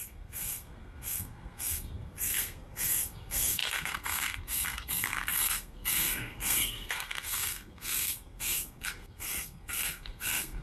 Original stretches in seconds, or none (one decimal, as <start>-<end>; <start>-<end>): none